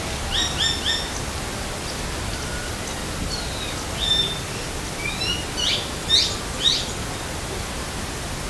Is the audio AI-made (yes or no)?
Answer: no